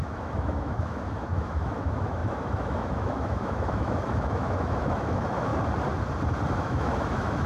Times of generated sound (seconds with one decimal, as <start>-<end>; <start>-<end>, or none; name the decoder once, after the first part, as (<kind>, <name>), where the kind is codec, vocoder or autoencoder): 0.0-5.5 (autoencoder, DAC-VAE); 6.6-7.5